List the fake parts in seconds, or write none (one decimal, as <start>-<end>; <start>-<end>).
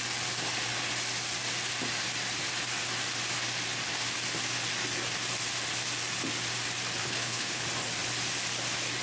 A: 7.0-7.6